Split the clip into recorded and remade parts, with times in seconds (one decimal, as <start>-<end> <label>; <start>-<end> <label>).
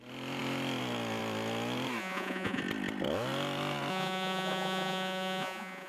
0.0-2.0 recorded; 2.0-2.6 remade; 2.6-3.9 recorded; 3.9-5.9 remade